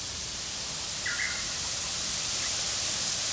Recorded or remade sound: remade